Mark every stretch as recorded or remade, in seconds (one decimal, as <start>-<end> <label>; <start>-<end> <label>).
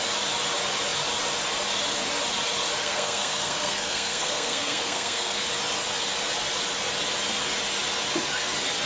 0.0-2.8 recorded; 2.8-5.4 remade; 5.4-8.9 recorded